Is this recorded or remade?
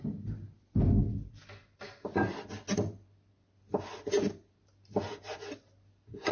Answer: recorded